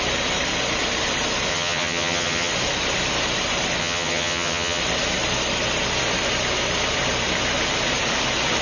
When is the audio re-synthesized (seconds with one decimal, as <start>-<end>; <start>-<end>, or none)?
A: 1.5-2.5; 3.8-4.8